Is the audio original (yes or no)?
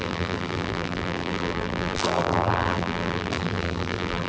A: no